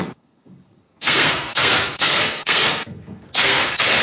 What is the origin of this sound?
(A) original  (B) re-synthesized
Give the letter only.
B